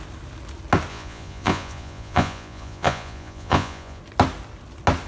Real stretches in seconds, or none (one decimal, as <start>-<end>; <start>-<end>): 0.0-0.9; 4.0-5.1